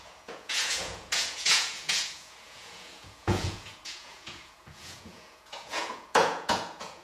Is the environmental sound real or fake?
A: fake